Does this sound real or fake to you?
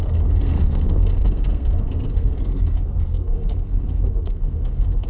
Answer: fake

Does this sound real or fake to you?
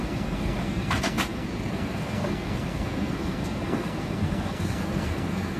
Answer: fake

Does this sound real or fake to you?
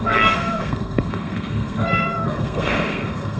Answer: fake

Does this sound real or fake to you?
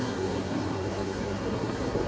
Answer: fake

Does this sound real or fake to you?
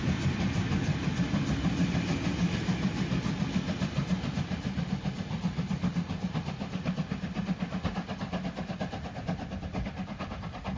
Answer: real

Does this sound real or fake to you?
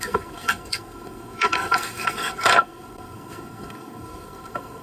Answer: fake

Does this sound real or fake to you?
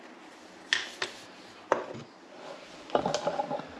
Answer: real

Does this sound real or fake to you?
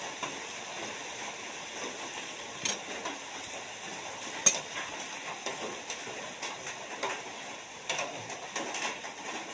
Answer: real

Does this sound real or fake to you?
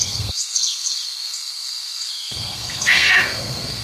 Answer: fake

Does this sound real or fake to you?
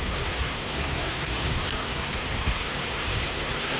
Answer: fake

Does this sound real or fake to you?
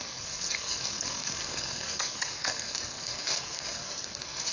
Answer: fake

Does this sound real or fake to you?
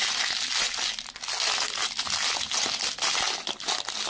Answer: real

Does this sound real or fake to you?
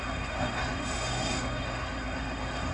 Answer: fake